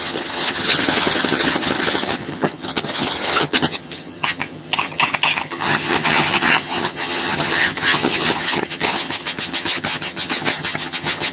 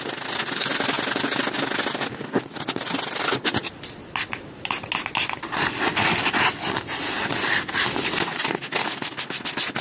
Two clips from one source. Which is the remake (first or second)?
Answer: first